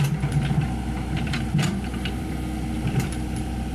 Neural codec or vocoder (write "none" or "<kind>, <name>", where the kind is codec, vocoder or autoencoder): vocoder, BigVGAN v2